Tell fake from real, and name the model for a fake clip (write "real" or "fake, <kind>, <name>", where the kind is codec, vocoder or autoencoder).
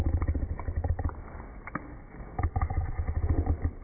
real